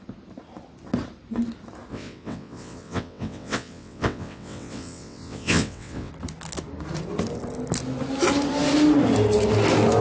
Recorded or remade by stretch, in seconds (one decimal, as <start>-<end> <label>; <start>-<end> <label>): 0.0-1.9 recorded; 1.9-6.1 remade; 6.1-10.0 recorded